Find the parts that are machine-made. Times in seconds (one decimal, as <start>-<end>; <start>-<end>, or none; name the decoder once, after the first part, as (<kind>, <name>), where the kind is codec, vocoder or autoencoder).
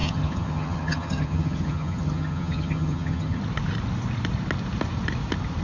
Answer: 0.0-3.4 (vocoder, HiFi-GAN)